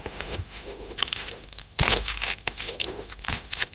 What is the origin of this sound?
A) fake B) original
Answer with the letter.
A